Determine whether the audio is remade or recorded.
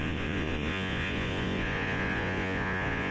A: remade